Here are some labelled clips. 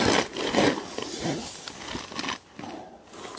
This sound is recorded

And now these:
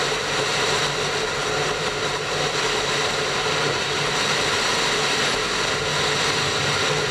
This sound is recorded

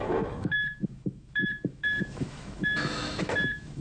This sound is remade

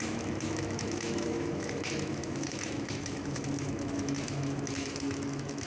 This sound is remade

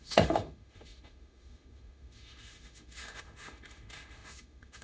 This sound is remade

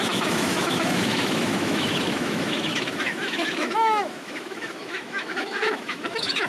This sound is remade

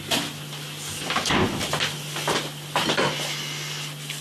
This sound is recorded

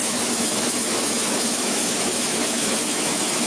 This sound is remade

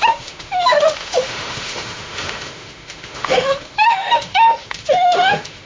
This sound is remade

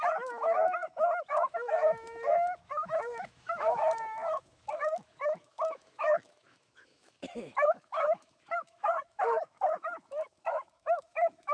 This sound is remade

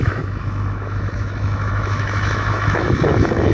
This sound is remade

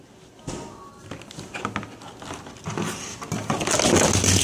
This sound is recorded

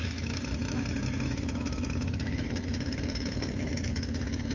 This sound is remade